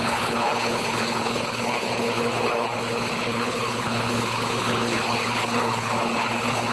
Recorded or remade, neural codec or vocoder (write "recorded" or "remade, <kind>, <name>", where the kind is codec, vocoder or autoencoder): remade, codec, HILCodec